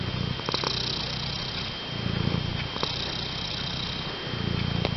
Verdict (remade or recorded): recorded